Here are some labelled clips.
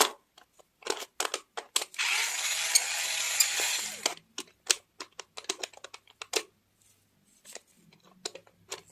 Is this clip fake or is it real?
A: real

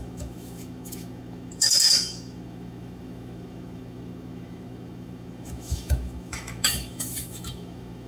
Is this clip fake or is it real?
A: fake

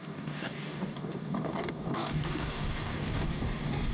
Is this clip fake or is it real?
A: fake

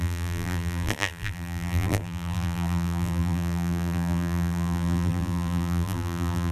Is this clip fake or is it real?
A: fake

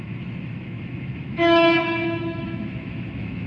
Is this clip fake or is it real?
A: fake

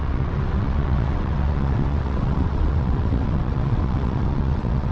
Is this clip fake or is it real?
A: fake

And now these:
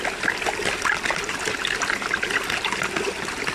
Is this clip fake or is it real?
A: real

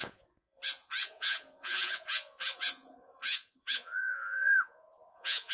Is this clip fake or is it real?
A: fake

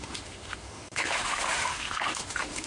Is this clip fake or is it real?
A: fake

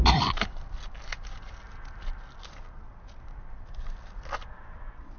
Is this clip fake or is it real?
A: real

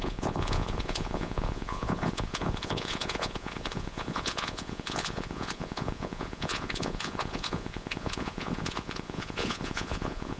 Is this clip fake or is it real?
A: fake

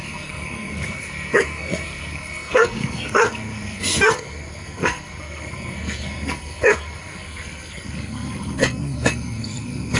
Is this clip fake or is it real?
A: fake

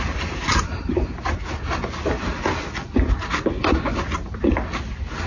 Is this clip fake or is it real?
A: real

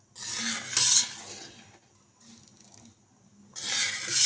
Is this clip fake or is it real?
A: real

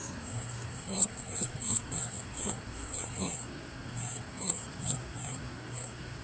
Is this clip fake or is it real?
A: fake